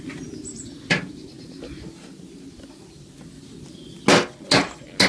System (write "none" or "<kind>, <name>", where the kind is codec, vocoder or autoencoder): none